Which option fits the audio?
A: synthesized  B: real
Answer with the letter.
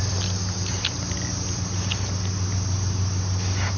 B